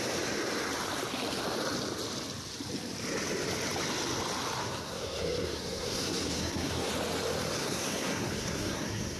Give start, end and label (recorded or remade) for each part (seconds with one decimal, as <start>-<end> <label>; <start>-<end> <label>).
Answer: 0.0-4.6 recorded; 4.6-6.9 remade; 6.9-7.6 recorded; 7.6-9.2 remade